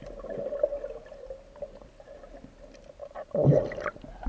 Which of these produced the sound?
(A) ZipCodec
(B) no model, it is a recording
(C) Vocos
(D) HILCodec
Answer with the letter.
B